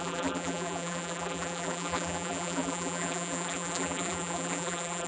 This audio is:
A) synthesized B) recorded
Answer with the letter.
A